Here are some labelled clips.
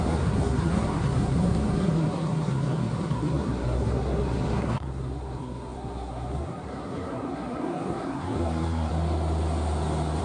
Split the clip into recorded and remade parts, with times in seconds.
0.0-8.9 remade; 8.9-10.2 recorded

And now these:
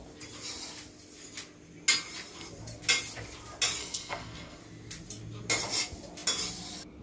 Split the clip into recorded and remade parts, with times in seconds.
0.0-3.8 recorded; 3.8-4.6 remade; 4.6-7.0 recorded

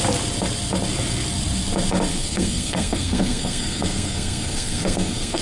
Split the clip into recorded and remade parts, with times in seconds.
0.0-2.1 recorded; 2.1-5.4 remade

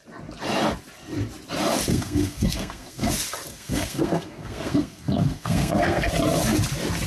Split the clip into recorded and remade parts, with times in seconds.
0.0-1.9 recorded; 1.9-3.1 remade; 3.1-3.5 recorded; 3.5-6.1 remade; 6.1-7.1 recorded